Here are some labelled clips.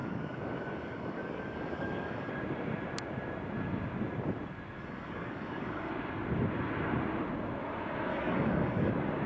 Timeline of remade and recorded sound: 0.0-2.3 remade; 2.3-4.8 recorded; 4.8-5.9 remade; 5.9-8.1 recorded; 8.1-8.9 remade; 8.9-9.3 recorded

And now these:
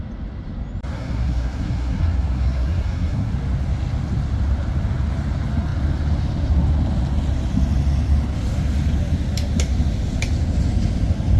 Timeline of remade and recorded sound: 0.0-0.9 recorded; 0.9-3.3 remade; 3.3-11.4 recorded

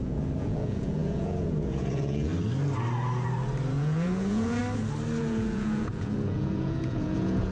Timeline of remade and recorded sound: 0.0-2.3 remade; 2.3-3.7 recorded; 3.7-4.6 remade; 4.6-5.2 recorded; 5.2-7.5 remade

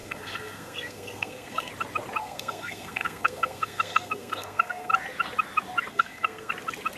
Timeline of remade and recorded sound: 0.0-1.7 remade; 1.7-2.2 recorded; 2.2-4.9 remade; 4.9-5.9 recorded; 5.9-6.5 remade; 6.5-7.0 recorded

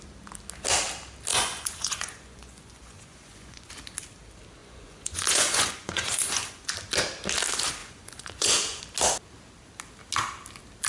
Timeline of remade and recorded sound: 0.0-1.3 recorded; 1.3-3.7 remade; 3.7-4.6 recorded; 4.6-6.7 remade; 6.7-7.8 recorded; 7.8-8.8 remade; 8.8-10.9 recorded

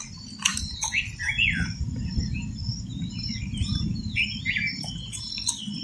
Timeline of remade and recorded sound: 0.0-0.5 recorded; 0.5-1.9 remade; 1.9-2.7 recorded; 2.7-5.3 remade; 5.3-5.8 recorded

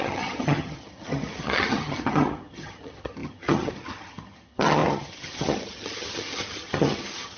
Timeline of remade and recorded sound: 0.0-7.4 remade

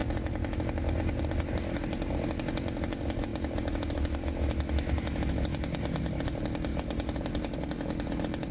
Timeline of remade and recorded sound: 0.0-6.7 recorded; 6.7-7.9 remade; 7.9-8.5 recorded